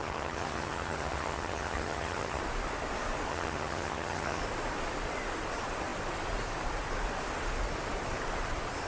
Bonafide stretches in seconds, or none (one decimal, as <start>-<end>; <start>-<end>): 2.4-3.3; 4.4-8.9